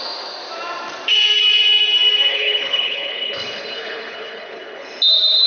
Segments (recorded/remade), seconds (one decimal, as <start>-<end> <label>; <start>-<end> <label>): 0.0-2.3 recorded; 2.3-5.0 remade; 5.0-5.5 recorded